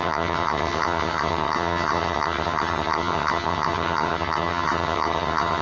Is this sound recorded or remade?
remade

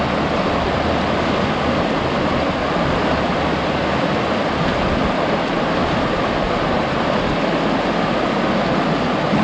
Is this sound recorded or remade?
recorded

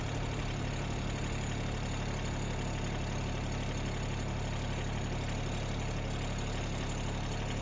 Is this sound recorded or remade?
recorded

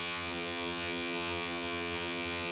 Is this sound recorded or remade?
remade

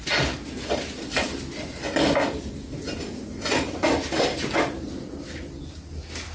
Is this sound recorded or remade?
recorded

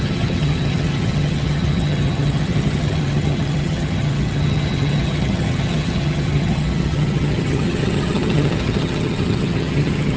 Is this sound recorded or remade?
remade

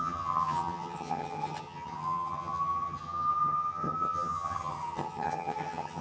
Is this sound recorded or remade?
remade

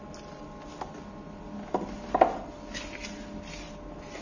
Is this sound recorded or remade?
recorded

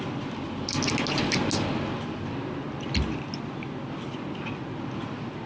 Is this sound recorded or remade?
recorded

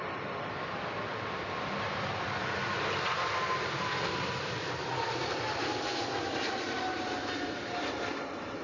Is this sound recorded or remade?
recorded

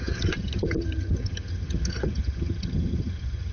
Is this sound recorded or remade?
remade